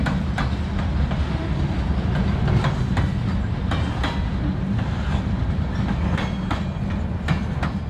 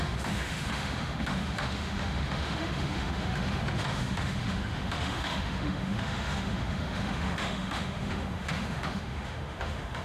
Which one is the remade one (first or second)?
second